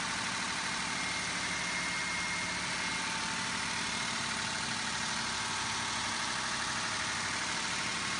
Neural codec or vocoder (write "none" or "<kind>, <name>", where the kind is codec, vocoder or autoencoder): none